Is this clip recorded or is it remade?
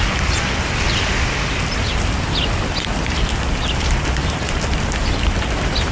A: recorded